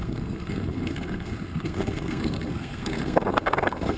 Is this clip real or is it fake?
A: fake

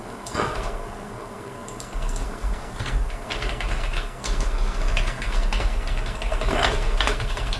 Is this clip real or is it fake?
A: fake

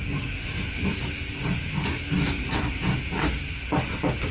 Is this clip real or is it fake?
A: real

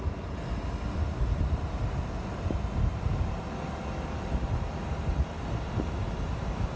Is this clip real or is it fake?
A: real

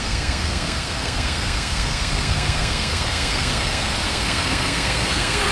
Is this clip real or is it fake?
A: fake